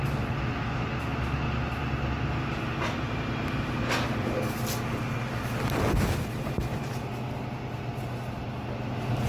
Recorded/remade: recorded